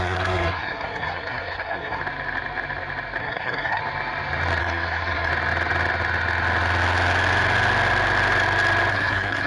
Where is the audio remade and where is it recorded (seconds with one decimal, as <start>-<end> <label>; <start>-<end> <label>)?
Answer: 0.0-2.0 remade; 2.0-3.2 recorded; 3.2-3.8 remade; 3.8-4.6 recorded; 4.6-5.3 remade; 5.3-8.9 recorded; 8.9-9.5 remade